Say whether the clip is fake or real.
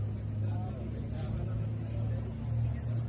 real